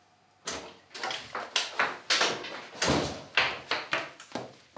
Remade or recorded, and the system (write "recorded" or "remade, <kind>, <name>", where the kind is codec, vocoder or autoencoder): recorded